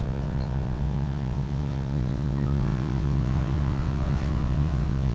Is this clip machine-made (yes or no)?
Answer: yes